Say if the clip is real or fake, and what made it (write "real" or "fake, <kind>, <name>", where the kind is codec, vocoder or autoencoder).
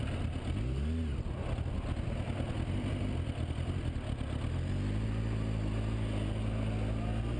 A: real